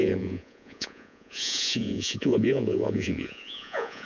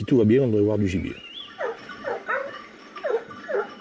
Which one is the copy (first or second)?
first